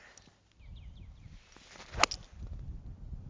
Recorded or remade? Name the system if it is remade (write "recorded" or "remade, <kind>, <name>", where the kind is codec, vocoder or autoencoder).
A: recorded